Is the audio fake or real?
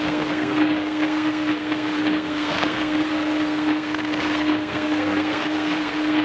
fake